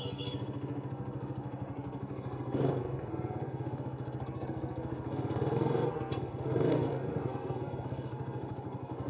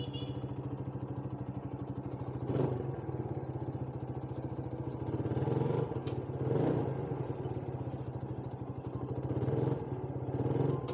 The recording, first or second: second